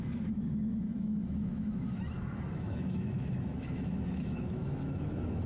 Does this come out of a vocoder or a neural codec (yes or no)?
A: yes